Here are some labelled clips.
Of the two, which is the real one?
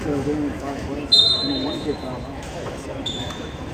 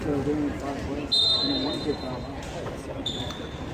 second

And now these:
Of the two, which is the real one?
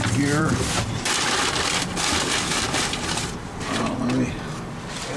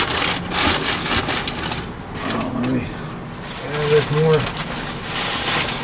second